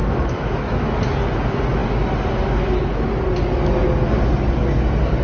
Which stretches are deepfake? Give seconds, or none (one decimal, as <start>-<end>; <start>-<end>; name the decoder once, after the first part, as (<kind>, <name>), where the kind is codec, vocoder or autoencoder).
0.0-1.0 (autoencoder, DAC-VAE)